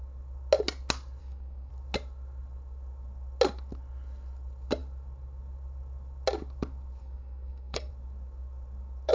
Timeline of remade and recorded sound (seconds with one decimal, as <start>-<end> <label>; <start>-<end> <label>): 0.0-1.2 recorded; 1.2-1.7 remade; 1.7-7.0 recorded; 7.0-7.9 remade; 7.9-9.1 recorded